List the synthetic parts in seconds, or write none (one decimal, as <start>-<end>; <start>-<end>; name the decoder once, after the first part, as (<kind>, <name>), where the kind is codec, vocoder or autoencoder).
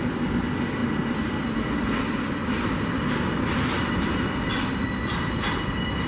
none